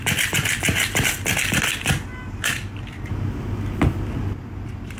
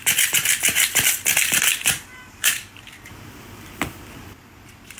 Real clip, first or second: first